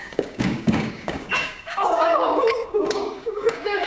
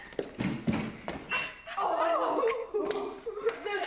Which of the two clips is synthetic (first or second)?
first